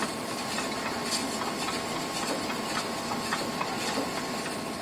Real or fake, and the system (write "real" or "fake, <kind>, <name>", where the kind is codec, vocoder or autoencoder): real